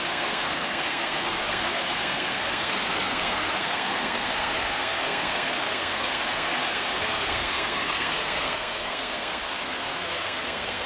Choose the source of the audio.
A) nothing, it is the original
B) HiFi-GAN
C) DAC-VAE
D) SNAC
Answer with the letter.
D